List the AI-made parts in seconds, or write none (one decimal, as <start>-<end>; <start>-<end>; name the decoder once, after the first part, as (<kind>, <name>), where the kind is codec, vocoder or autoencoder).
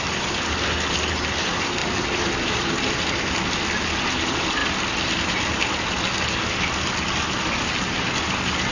1.8-3.3 (vocoder, BigVGAN v2)